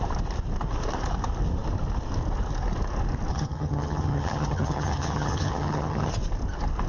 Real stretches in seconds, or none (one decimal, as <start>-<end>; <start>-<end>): 0.0-3.3; 6.1-6.9

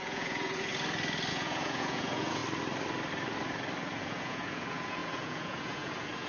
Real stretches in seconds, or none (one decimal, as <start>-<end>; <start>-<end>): 0.7-1.3; 2.4-4.0